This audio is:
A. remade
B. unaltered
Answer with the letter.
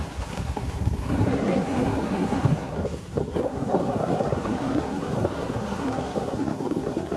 A